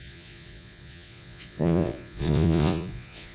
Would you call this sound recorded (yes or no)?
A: no